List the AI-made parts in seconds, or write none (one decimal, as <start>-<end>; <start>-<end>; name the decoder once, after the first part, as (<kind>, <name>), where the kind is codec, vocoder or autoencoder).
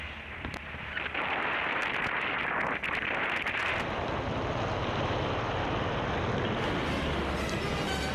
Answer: none